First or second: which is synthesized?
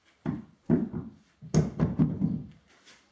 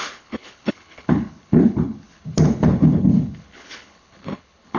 second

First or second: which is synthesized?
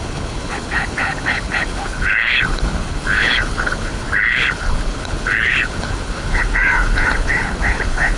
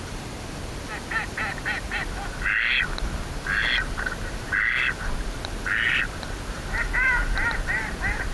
first